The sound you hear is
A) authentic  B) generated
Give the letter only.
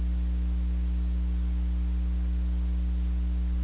A